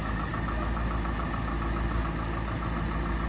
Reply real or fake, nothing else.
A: real